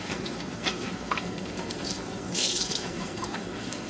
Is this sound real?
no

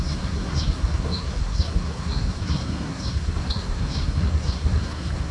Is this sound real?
no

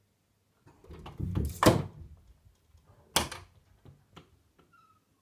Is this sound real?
yes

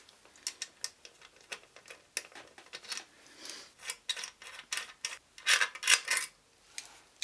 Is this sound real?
yes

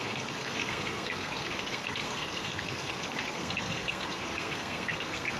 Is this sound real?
no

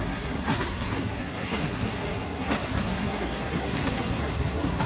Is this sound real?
no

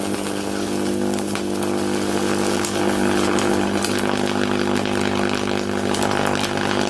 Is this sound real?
yes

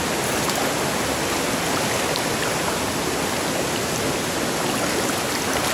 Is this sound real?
yes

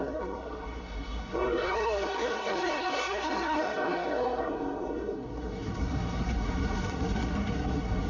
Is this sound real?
no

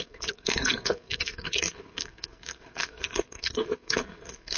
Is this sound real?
no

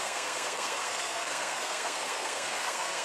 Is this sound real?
no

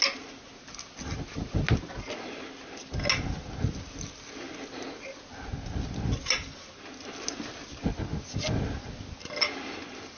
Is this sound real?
yes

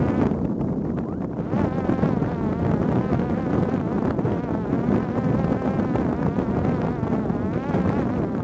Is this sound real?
yes